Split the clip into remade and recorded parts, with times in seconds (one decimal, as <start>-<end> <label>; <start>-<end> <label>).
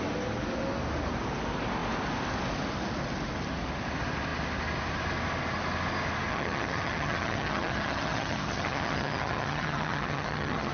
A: 0.0-6.3 recorded; 6.3-10.7 remade